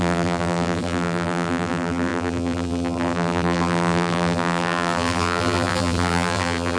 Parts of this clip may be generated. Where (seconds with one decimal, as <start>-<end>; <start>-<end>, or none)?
0.0-6.8

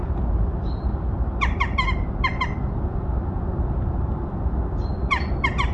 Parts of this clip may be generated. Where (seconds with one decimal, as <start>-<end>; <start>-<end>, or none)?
none

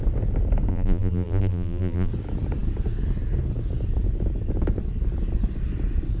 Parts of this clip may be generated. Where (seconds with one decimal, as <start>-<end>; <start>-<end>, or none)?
0.7-2.1

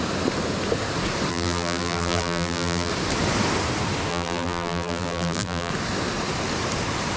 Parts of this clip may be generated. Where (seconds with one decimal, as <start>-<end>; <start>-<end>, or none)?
1.3-2.9; 4.1-5.7

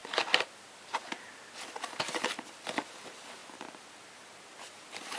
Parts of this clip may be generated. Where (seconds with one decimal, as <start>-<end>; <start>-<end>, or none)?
none